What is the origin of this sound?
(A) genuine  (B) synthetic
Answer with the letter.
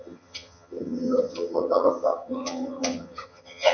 B